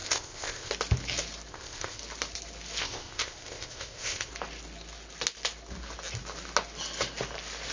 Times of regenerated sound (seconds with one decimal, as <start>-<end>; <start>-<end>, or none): 0.0-0.7; 1.5-2.0; 2.8-4.3